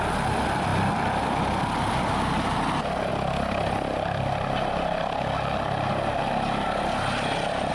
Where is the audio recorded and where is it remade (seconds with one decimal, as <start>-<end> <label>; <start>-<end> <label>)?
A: 0.0-7.7 recorded